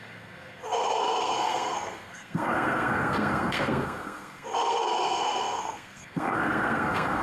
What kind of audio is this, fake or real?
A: fake